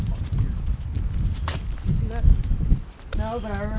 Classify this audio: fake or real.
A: real